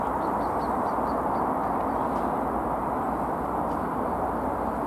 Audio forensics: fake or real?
real